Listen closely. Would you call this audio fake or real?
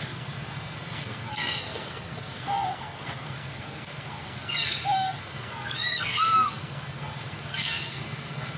fake